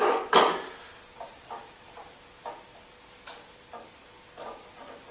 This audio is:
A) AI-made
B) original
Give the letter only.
B